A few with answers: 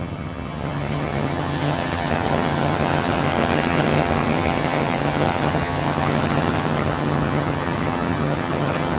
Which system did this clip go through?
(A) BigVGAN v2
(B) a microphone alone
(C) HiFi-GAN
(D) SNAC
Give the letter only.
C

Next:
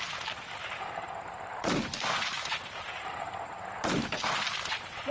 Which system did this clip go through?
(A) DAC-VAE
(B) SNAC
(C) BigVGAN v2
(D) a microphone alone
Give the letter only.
C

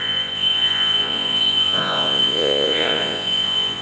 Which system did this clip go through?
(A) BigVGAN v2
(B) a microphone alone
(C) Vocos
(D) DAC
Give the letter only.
C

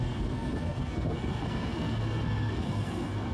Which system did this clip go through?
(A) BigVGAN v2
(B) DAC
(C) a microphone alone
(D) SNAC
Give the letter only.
D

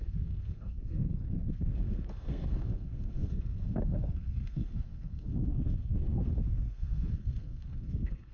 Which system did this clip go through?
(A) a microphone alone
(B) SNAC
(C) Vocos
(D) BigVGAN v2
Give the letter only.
B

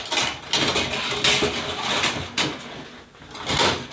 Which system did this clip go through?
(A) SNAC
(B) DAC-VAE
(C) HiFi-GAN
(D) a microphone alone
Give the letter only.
D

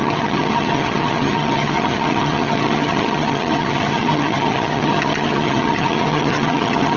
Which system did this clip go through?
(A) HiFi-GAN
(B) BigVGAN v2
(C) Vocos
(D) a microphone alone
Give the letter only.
A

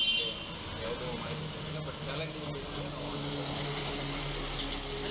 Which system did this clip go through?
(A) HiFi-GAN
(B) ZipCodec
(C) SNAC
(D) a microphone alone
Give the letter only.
D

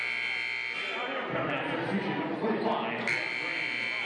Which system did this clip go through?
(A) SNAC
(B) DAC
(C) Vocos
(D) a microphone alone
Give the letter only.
D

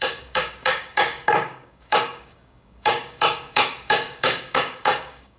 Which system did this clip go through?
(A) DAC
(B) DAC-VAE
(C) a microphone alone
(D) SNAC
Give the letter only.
A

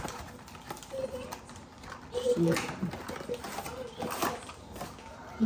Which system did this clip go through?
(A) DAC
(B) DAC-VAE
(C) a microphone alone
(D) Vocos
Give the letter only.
C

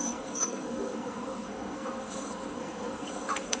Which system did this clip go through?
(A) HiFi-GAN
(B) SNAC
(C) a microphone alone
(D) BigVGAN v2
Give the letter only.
B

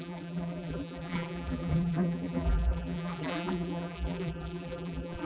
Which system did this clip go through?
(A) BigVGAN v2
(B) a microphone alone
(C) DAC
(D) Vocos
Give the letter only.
A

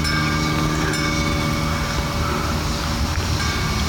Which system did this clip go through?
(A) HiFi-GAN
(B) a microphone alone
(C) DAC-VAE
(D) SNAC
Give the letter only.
B